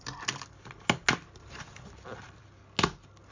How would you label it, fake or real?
real